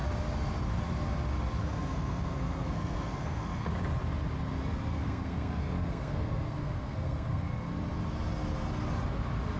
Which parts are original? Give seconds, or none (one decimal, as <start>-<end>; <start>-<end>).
0.0-1.6; 3.7-4.9; 7.5-9.6